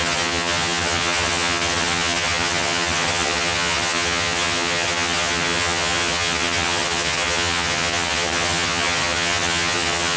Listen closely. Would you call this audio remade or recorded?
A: remade